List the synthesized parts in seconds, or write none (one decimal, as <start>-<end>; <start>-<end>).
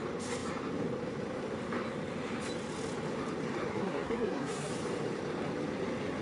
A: 3.7-4.7